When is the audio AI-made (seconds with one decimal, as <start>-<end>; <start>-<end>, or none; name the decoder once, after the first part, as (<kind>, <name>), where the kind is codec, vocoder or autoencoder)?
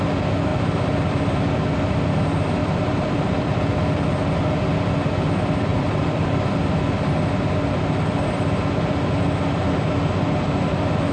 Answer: 2.6-4.6 (vocoder, BigVGAN v2); 5.7-6.9